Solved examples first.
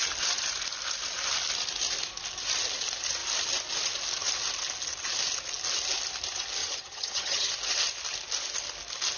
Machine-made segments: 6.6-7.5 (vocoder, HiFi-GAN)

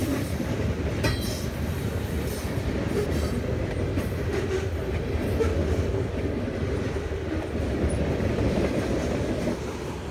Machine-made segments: 0.0-0.9 (vocoder, BigVGAN v2)

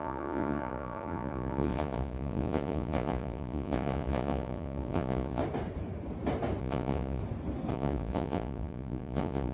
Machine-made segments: 0.0-5.4 (vocoder, Vocos); 6.6-7.2; 7.7-9.5

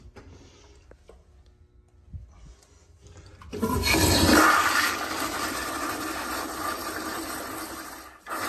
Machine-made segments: 4.6-6.5 (vocoder, BigVGAN v2)

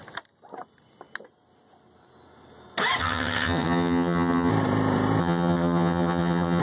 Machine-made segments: 3.0-4.5 (vocoder, HiFi-GAN); 5.2-6.6

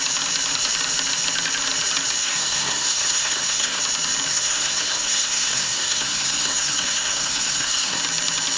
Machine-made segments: 2.2-3.8 (codec, SNAC); 4.3-8.0

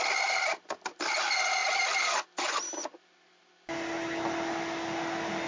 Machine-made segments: none

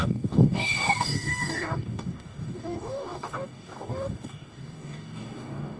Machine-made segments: 0.0-5.8 (codec, DAC)